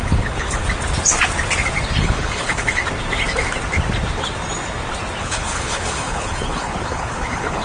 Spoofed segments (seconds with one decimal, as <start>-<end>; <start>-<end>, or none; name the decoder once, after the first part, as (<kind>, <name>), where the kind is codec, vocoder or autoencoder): 0.0-0.6 (codec, HILCodec); 2.0-2.8; 5.2-7.6